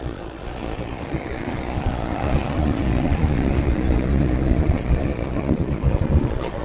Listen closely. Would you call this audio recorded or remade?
remade